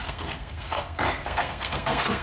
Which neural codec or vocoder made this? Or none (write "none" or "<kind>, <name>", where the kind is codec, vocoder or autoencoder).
codec, SNAC